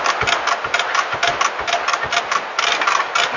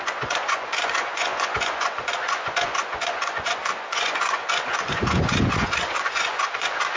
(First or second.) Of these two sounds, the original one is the first